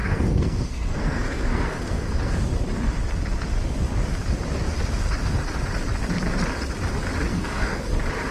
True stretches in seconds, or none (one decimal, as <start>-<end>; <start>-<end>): 2.4-7.3; 7.9-8.3